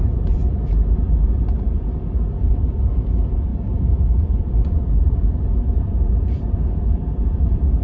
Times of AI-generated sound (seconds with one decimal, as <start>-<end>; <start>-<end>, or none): 0.0-0.4; 1.1-7.8

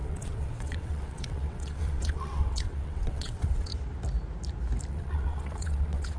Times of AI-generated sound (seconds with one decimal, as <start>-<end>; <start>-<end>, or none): 0.0-3.7; 4.9-6.2

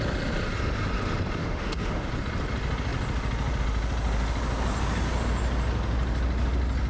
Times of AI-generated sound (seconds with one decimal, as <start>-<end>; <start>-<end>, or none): 1.4-2.1

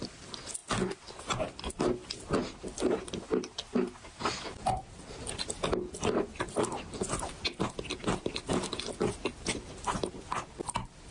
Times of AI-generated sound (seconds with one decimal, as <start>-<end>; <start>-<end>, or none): none

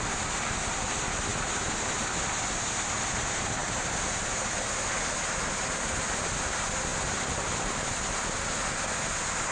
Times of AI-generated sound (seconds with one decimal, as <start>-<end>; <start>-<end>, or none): none

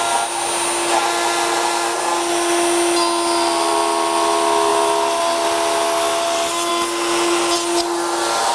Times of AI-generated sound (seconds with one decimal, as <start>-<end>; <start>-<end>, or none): none